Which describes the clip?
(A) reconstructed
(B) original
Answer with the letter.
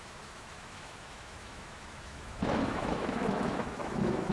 A